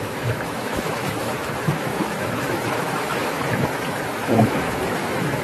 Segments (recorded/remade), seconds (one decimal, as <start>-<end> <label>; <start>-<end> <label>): 0.0-5.4 remade